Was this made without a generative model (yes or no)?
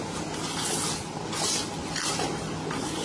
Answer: yes